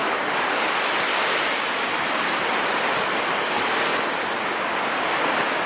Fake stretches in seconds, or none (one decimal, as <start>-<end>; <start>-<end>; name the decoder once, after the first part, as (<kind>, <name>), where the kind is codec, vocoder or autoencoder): 3.4-3.9 (codec, DAC); 4.5-5.7